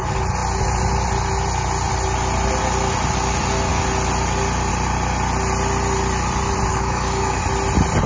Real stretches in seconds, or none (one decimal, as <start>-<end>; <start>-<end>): 0.0-6.7; 7.4-8.1